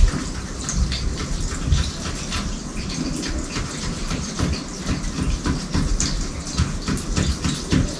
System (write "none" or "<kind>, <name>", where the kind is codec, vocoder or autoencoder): none